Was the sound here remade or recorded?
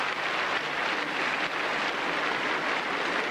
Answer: recorded